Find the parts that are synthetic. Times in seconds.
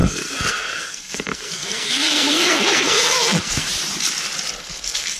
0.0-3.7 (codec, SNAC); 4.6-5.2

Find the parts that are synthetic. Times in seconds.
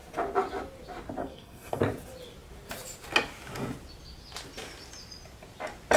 1.2-1.8 (codec, SNAC)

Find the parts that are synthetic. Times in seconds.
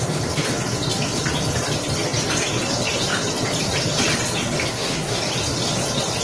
4.7-5.2 (codec, SNAC)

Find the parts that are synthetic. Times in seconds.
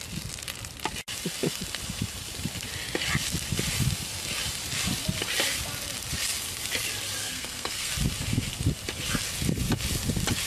7.2-7.9 (codec, SNAC)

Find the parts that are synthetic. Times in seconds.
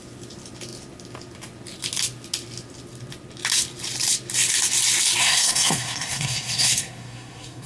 5.2-7.7 (codec, SNAC)